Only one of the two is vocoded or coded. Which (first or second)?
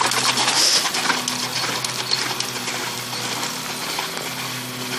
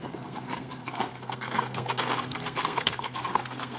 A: second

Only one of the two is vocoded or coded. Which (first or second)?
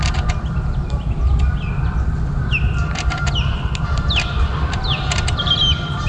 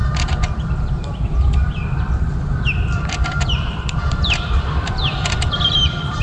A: second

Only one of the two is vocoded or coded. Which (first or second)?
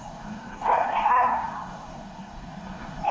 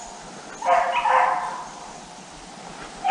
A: first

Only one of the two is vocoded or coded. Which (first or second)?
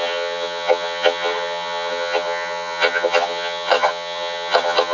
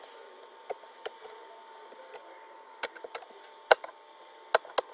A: first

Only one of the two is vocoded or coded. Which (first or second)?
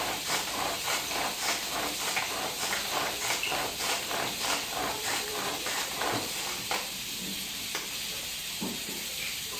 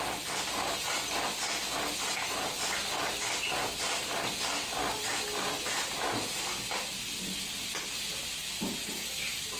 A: first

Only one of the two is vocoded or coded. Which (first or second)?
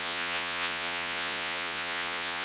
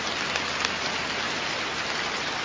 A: first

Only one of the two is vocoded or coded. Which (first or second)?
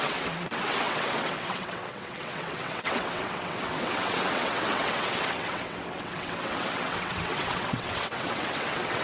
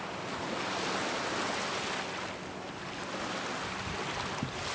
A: first